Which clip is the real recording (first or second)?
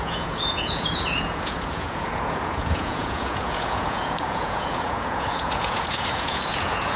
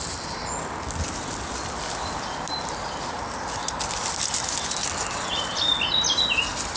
second